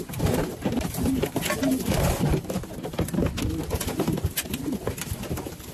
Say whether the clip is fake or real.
real